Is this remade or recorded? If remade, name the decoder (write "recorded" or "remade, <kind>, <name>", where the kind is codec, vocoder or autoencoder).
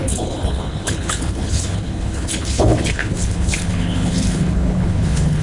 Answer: remade, codec, HILCodec